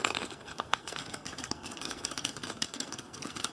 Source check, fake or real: fake